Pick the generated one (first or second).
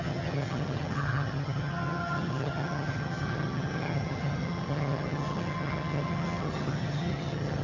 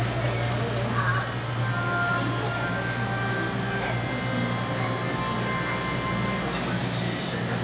first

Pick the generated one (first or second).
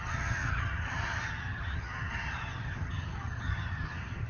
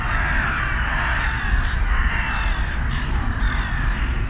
first